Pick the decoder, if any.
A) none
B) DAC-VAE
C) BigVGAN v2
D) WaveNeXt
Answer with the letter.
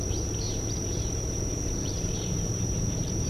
C